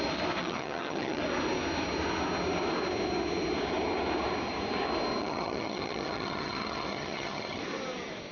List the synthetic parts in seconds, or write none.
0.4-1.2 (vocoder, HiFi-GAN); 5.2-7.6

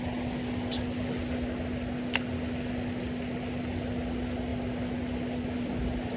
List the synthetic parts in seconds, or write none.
none

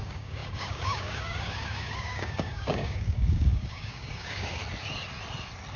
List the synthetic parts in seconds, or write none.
0.0-4.6 (codec, DAC)

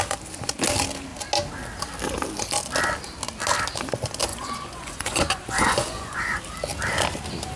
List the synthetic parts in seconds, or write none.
4.3-6.4 (vocoder, Vocos)

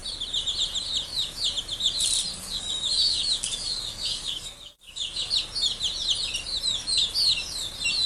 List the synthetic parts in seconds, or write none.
2.3-5.3 (codec, DAC)

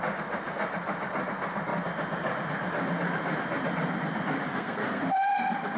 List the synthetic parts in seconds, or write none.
4.5-5.0 (codec, SNAC)

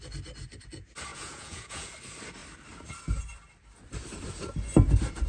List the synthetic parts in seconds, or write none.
1.1-1.9 (vocoder, Vocos)